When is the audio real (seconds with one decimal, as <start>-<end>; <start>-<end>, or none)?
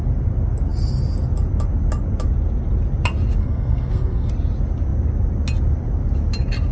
0.0-3.4; 4.3-6.7